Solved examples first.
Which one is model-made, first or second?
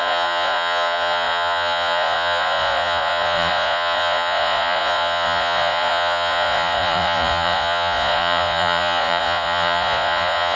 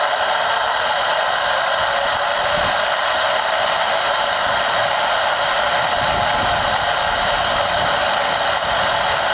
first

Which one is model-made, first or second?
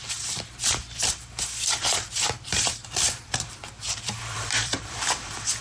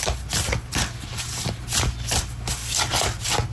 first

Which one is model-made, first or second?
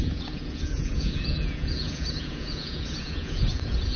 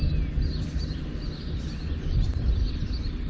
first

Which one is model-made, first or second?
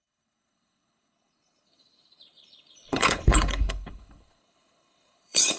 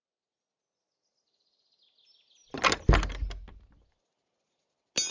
first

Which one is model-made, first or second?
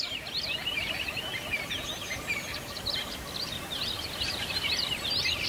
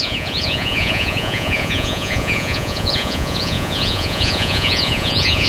second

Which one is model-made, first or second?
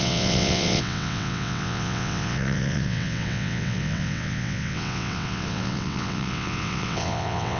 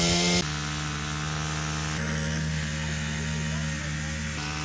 first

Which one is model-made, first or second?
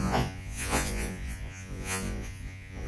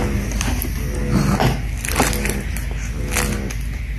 first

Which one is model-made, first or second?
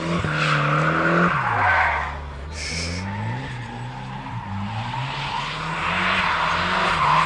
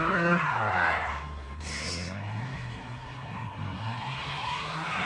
second